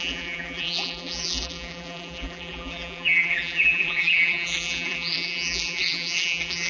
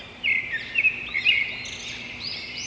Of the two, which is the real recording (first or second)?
second